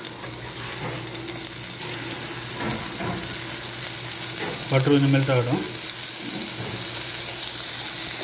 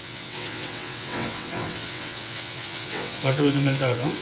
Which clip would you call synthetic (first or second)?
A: second